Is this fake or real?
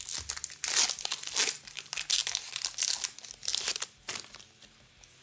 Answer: real